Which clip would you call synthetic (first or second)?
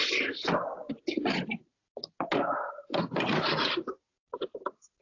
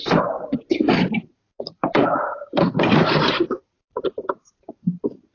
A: second